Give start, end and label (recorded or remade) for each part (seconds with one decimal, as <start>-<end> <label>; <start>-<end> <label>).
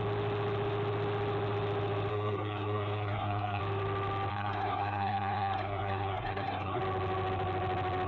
0.0-2.1 recorded; 2.1-3.6 remade; 3.6-4.3 recorded; 4.3-6.8 remade; 6.8-8.1 recorded